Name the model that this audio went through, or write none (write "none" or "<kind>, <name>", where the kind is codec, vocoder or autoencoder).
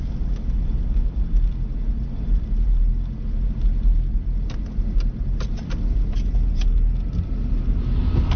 none